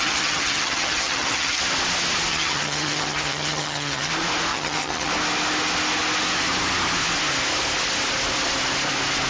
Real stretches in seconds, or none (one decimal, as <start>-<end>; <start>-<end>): 1.6-2.3; 4.1-4.5; 5.1-9.3